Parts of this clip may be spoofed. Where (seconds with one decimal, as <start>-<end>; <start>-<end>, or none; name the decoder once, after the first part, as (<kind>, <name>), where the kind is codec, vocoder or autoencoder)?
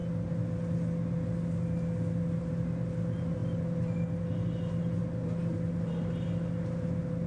none